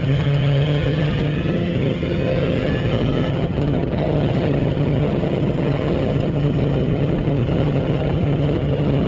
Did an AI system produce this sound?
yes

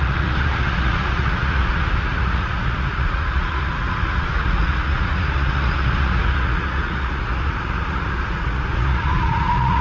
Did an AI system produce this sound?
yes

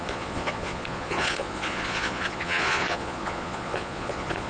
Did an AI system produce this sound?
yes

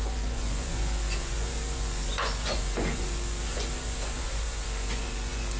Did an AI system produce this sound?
yes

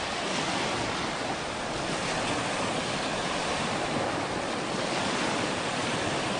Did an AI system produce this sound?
no